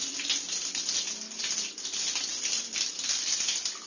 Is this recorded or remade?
recorded